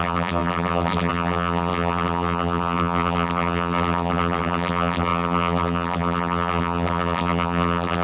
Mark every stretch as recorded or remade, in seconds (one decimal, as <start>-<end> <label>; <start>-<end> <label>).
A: 0.0-8.0 remade